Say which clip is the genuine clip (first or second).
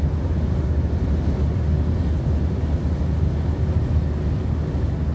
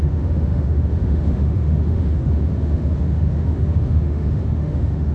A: first